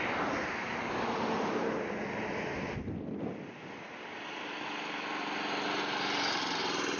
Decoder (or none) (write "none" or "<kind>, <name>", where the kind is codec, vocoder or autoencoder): none